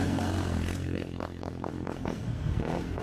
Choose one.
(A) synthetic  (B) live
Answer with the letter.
A